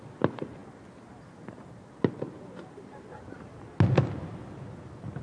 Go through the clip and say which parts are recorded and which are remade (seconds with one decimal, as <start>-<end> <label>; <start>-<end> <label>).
0.0-5.2 recorded